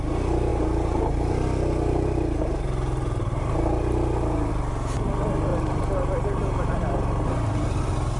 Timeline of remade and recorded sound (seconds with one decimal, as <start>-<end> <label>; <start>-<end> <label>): 0.0-0.5 recorded; 0.5-4.5 remade; 4.5-5.5 recorded; 5.5-6.8 remade; 6.8-8.2 recorded